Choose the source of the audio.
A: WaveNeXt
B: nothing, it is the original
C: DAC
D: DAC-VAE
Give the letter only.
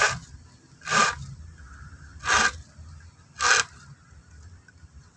B